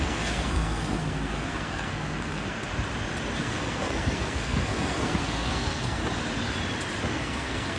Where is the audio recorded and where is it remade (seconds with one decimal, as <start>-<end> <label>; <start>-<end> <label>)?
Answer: 0.0-2.7 remade; 2.7-3.4 recorded; 3.4-6.0 remade; 6.0-7.1 recorded; 7.1-7.8 remade